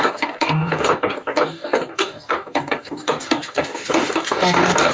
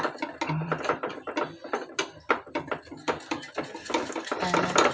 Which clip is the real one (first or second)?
second